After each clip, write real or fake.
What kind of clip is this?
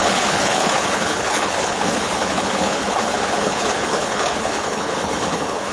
fake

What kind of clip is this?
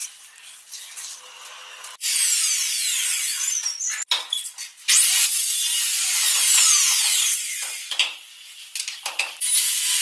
real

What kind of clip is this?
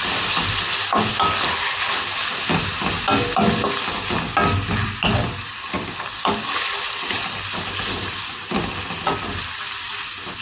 real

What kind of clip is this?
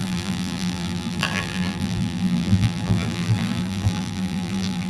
fake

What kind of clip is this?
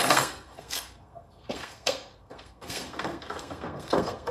fake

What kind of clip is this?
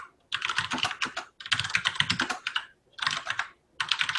real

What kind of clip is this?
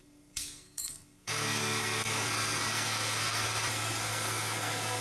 fake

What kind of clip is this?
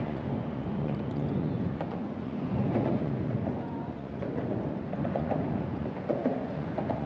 fake